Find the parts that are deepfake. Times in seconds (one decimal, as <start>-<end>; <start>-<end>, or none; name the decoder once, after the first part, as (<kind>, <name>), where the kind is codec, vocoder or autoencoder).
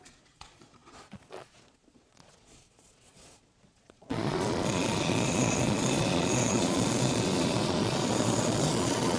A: 0.0-9.2 (vocoder, Vocos)